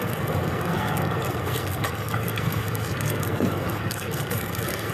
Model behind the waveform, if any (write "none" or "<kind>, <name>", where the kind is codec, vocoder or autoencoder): codec, SNAC